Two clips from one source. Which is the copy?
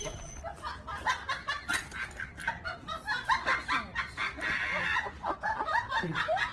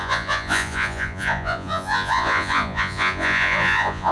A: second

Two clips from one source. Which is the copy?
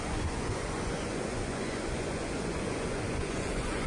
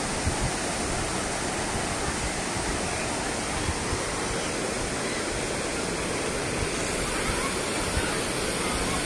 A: first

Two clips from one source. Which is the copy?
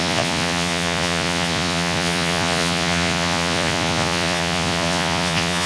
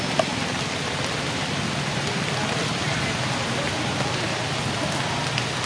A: first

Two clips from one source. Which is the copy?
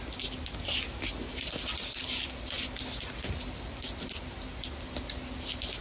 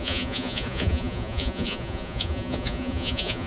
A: second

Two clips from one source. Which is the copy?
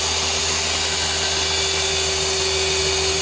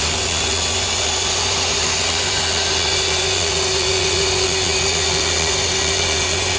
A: second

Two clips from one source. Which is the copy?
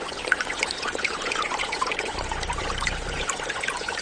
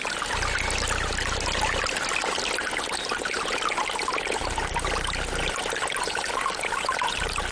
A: first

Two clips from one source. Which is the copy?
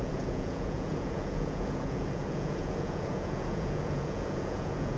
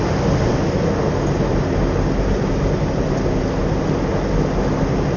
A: first